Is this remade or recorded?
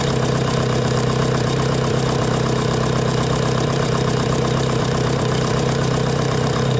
remade